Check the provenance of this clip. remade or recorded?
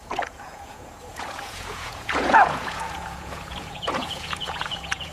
remade